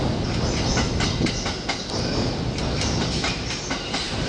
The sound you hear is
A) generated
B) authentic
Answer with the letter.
B